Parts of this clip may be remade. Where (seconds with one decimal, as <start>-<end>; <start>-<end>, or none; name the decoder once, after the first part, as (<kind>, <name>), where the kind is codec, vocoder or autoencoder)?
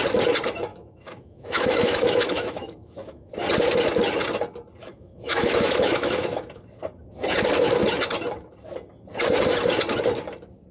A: 0.7-3.3 (autoencoder, DAC-VAE); 4.8-6.6